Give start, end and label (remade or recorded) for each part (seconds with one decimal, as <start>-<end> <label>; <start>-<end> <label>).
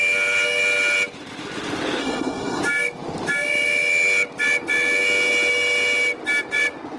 0.0-2.0 recorded; 2.0-2.6 remade; 2.6-7.0 recorded